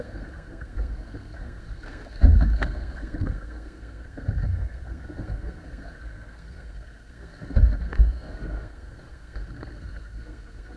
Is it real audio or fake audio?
fake